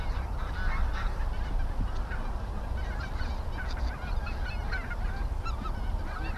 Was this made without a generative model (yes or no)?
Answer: yes